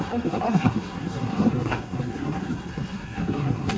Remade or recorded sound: remade